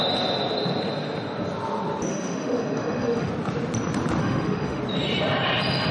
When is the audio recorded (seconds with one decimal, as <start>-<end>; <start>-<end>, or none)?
0.0-2.1; 3.3-4.2; 4.8-5.9